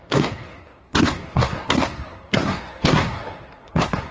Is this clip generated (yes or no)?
yes